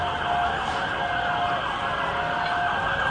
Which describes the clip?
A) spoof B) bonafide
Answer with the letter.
B